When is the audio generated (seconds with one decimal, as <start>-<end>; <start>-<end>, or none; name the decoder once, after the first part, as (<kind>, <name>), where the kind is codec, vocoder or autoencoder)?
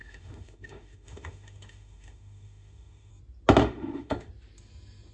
0.0-3.1 (autoencoder, DAC-VAE); 3.6-4.3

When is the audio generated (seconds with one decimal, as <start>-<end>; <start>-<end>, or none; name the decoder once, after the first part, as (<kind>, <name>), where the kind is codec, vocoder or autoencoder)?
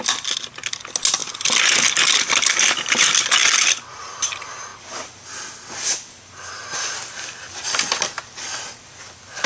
none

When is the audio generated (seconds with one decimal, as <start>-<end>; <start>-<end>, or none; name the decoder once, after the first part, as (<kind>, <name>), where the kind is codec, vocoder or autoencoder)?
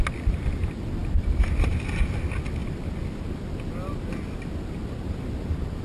none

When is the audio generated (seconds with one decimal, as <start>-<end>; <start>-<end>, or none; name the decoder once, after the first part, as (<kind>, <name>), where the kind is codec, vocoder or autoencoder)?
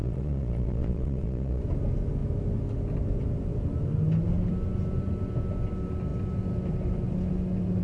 0.0-1.6 (vocoder, Vocos)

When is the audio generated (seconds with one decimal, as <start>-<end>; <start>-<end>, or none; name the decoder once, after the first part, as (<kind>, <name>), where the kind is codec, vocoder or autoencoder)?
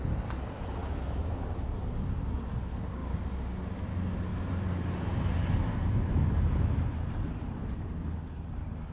none